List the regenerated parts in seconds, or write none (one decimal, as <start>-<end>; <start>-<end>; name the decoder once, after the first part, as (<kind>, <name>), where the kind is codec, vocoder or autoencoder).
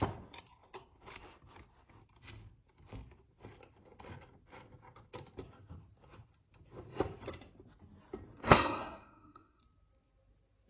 8.4-9.6 (codec, SNAC)